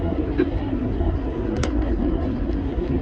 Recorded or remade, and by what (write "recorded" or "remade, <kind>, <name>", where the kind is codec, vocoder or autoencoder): remade, codec, SNAC